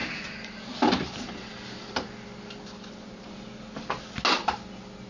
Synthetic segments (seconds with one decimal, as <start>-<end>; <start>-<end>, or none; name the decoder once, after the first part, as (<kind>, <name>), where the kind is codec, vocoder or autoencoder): none